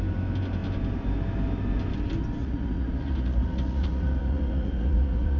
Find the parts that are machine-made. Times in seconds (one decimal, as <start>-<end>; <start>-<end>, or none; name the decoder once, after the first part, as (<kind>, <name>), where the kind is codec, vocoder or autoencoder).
2.4-5.4 (vocoder, Vocos)

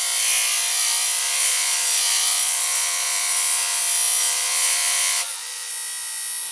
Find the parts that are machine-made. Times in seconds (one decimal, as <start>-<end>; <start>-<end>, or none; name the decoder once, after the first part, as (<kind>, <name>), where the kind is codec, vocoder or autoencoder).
1.2-3.8 (vocoder, Vocos); 4.2-5.7

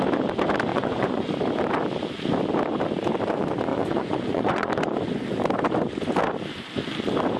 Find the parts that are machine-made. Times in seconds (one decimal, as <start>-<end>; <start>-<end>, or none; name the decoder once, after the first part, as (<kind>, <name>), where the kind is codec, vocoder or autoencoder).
0.7-1.3 (vocoder, Vocos); 3.7-4.7

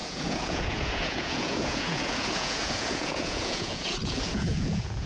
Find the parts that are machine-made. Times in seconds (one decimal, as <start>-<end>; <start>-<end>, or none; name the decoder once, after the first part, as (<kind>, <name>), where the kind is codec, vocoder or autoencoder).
0.0-5.1 (vocoder, Vocos)

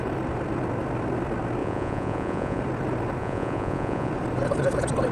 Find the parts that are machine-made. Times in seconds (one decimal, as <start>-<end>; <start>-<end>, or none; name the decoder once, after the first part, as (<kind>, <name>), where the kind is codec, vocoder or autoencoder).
1.6-2.6 (vocoder, Vocos); 3.2-4.1

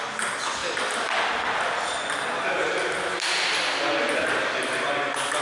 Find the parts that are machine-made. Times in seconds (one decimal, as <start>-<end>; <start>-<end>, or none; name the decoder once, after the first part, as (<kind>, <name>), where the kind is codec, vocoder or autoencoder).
none

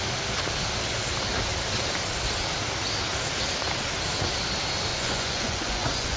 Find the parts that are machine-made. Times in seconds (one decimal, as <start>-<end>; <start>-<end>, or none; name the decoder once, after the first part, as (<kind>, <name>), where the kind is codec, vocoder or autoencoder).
4.9-6.2 (vocoder, Vocos)